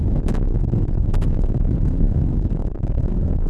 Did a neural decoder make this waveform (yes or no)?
yes